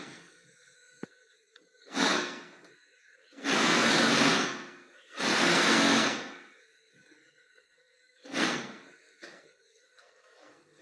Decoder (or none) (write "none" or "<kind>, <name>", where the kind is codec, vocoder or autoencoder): codec, SNAC